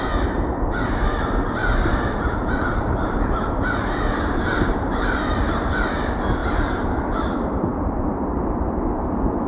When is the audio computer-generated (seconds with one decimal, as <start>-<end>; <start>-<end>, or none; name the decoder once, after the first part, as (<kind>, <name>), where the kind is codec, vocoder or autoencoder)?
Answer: 1.6-5.5 (vocoder, BigVGAN v2); 6.4-7.0